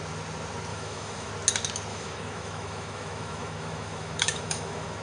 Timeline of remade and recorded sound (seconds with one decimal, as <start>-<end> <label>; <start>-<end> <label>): 0.0-0.7 recorded; 0.7-1.3 remade; 1.3-1.9 recorded; 1.9-5.0 remade